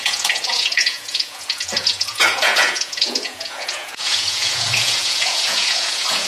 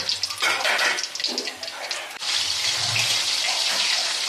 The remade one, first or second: first